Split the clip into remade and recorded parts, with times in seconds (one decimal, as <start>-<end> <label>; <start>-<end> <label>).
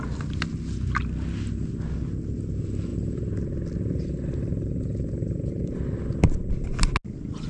0.0-7.5 recorded